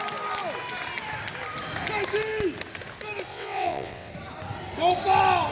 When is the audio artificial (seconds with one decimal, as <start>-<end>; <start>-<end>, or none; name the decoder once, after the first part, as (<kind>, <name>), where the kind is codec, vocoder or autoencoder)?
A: 3.3-4.1 (vocoder, WaveNeXt)